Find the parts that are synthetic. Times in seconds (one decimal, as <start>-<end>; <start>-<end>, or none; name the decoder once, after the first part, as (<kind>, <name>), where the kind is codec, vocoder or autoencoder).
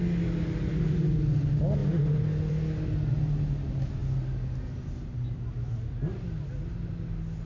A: none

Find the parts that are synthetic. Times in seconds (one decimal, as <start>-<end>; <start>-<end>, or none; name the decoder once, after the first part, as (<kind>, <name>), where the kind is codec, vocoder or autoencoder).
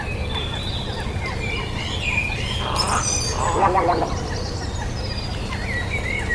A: 0.6-4.3 (vocoder, BigVGAN v2)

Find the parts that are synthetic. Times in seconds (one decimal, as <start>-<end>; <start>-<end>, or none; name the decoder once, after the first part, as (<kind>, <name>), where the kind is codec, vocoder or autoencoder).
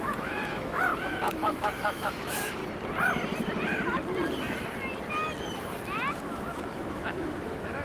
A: 0.0-2.6 (autoencoder, DAC-VAE); 6.1-7.8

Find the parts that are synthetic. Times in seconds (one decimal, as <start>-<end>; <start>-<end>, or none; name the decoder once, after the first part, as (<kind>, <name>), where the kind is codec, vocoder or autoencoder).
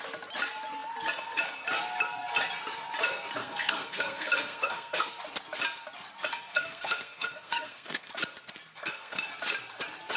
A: 3.4-5.1 (codec, SNAC); 6.3-8.1; 8.8-9.3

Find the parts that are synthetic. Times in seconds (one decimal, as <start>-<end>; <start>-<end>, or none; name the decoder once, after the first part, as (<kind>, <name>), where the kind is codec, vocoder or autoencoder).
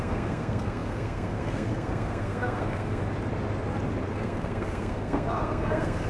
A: 0.0-3.0 (codec, SNAC); 4.1-6.1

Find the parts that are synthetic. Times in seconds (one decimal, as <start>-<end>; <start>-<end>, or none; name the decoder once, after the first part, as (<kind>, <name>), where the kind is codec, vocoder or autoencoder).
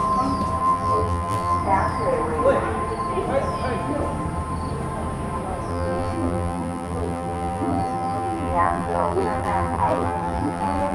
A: 0.6-1.6 (vocoder, BigVGAN v2); 5.7-10.9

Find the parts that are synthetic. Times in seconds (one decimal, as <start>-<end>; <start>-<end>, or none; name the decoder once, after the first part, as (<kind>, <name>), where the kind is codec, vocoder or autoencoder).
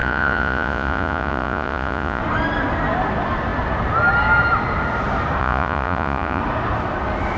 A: 0.0-2.2 (vocoder, Vocos); 5.4-6.4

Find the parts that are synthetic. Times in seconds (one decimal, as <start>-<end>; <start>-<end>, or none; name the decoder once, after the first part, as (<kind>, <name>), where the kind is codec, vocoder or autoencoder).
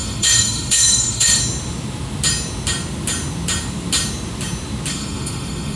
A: 0.0-1.4 (autoencoder, DAC-VAE); 4.9-5.8